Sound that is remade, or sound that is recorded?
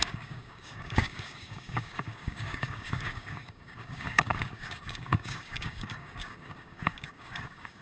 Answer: remade